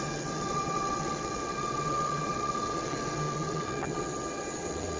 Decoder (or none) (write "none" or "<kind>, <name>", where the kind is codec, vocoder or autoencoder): vocoder, WaveNeXt